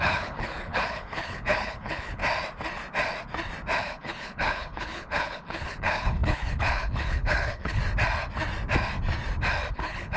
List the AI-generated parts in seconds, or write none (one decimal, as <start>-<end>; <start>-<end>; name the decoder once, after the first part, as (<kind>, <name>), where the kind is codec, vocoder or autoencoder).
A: 0.0-2.2 (codec, HILCodec); 3.8-7.8; 9.7-10.2